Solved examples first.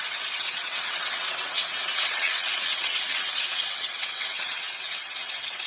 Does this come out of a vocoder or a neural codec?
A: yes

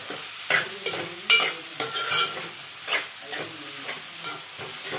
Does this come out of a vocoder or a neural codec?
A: no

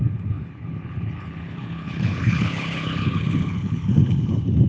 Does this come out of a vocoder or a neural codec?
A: yes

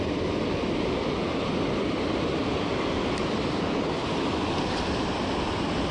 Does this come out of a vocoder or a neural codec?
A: no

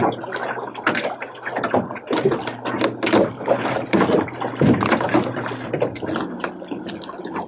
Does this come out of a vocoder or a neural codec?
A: no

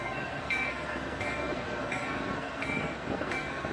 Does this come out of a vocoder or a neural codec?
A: yes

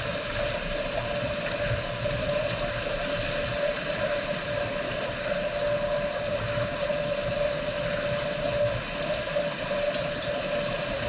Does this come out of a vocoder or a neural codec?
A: no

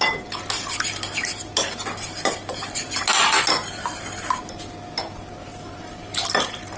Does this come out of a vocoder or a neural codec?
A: no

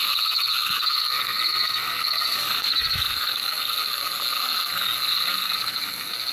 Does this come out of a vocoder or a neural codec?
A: yes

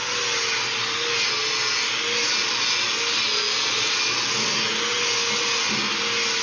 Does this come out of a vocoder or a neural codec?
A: no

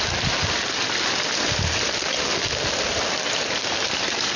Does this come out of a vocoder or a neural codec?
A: no